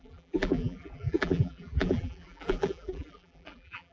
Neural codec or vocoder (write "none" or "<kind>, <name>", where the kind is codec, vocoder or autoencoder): vocoder, BigVGAN v2